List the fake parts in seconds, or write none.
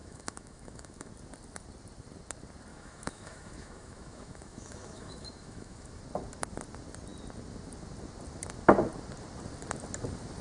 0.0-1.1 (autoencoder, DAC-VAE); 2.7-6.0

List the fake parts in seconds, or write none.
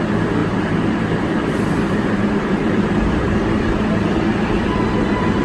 0.4-3.6 (vocoder, BigVGAN v2)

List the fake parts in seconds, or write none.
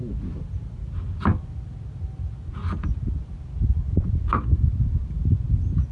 none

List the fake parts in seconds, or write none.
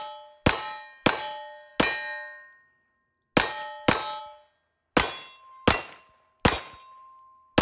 none